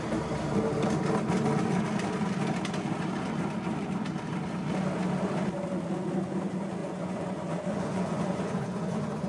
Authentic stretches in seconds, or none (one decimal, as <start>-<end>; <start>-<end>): 0.0-6.8